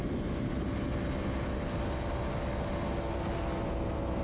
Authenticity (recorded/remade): recorded